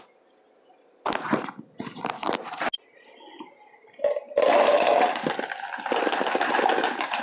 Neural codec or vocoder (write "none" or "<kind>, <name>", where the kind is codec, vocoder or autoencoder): none